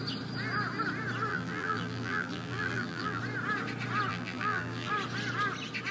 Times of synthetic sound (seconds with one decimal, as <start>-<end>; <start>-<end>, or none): 1.3-3.2; 4.1-4.9